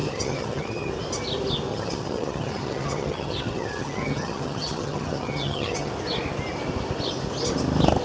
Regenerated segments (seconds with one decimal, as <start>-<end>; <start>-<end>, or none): 0.0-0.9; 1.7-5.9